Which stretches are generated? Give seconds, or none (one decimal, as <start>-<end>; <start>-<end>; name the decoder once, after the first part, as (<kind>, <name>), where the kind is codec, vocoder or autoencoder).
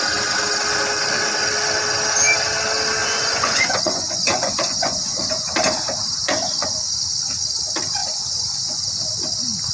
3.0-5.5 (vocoder, Vocos); 6.2-6.9; 8.0-8.9